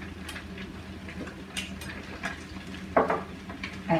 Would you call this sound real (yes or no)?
yes